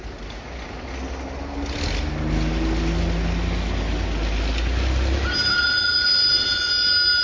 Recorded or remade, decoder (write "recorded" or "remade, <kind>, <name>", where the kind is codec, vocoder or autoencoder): recorded